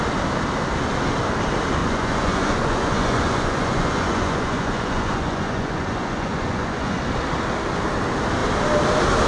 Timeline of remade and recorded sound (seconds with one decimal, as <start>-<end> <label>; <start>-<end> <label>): 0.0-1.8 recorded; 1.8-7.0 remade; 7.0-9.3 recorded